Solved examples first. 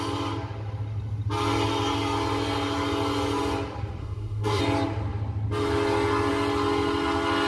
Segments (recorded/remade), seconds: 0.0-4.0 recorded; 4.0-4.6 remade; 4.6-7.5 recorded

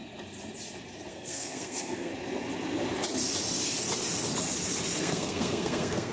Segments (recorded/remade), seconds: 0.0-1.1 recorded; 1.1-2.1 remade; 2.1-5.0 recorded; 5.0-6.1 remade

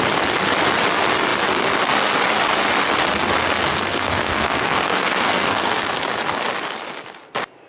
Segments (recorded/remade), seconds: 0.0-3.7 recorded; 3.7-5.8 remade; 5.8-7.7 recorded

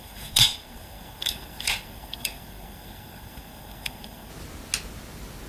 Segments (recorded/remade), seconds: 0.0-4.3 remade; 4.3-5.5 recorded

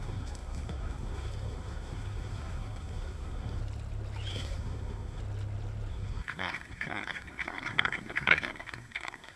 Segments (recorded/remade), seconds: 0.0-3.6 remade; 3.6-4.3 recorded; 4.3-5.2 remade; 5.2-5.9 recorded; 5.9-9.4 remade

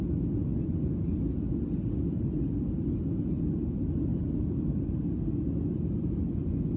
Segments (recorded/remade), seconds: 0.0-6.8 recorded

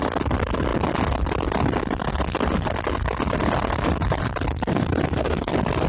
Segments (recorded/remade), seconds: 0.0-4.7 recorded; 4.7-5.5 remade; 5.5-5.9 recorded

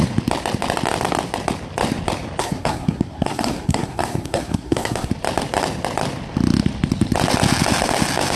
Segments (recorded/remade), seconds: 0.0-2.4 recorded; 2.4-5.1 remade; 5.1-8.4 recorded